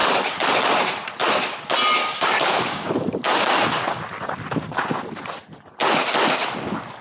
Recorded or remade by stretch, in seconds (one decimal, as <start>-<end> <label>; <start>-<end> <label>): 0.0-2.0 recorded; 2.0-2.9 remade; 2.9-7.0 recorded